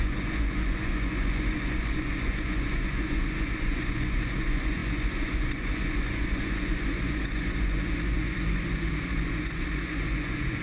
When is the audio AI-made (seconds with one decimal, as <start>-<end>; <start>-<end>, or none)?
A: 0.0-10.6